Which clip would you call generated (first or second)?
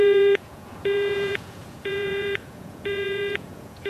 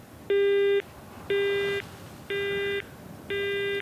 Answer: first